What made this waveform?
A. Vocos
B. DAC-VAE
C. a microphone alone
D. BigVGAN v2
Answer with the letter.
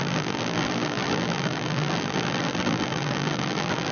D